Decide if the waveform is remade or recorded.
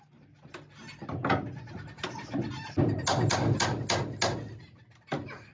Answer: recorded